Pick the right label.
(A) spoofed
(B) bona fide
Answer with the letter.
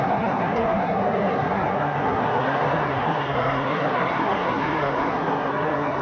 A